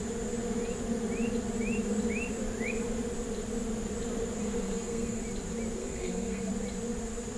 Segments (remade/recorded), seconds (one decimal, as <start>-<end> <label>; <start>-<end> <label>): 0.0-4.4 recorded; 4.4-5.2 remade; 5.2-5.8 recorded; 5.8-6.5 remade; 6.5-7.4 recorded